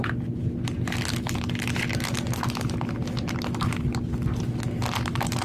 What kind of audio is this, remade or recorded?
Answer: recorded